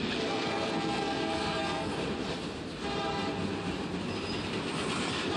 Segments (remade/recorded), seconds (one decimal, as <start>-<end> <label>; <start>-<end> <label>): 0.0-1.9 remade; 1.9-5.4 recorded